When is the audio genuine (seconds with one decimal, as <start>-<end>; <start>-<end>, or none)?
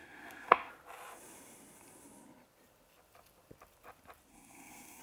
0.7-4.3